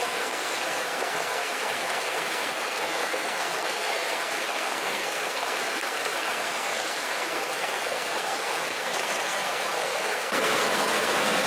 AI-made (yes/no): yes